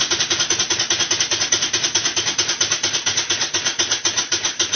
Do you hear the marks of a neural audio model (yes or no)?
no